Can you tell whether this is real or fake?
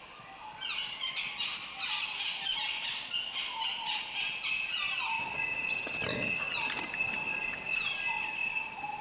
real